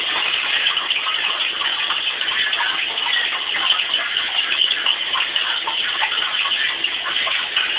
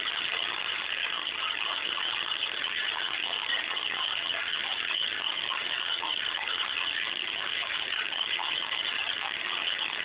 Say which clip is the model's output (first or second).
second